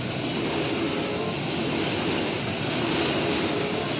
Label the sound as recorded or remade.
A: recorded